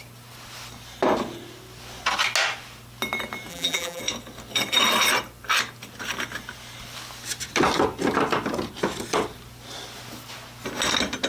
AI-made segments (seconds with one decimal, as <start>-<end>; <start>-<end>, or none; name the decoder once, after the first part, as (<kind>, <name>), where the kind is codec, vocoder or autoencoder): 3.5-4.0 (vocoder, BigVGAN v2)